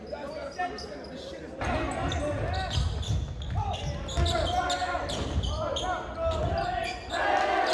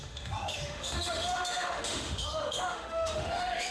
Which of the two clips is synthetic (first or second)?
second